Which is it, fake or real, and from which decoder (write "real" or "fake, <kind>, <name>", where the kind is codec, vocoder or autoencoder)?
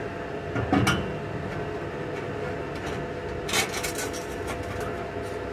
real